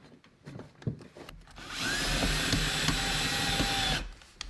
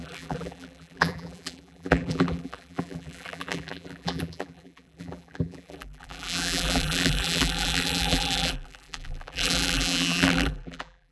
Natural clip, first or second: first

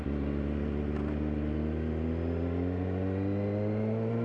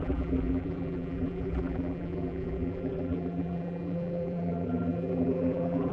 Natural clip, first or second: first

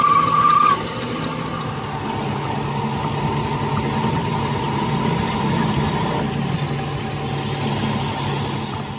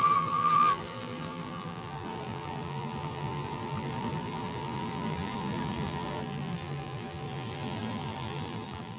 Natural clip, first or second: first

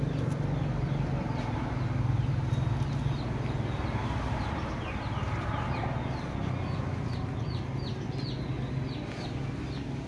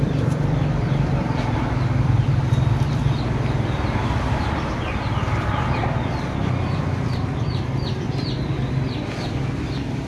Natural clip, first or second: first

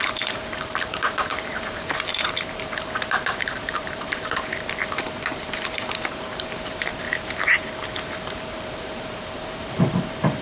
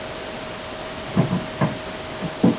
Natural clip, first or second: second